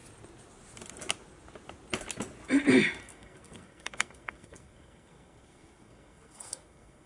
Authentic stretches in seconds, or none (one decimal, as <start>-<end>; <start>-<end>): 0.0-3.0